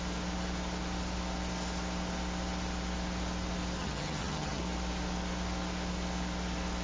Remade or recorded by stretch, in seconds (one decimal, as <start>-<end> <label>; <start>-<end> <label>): 0.0-3.8 recorded; 3.8-4.6 remade; 4.6-6.8 recorded